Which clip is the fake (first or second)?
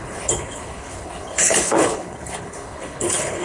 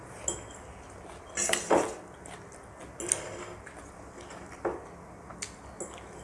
first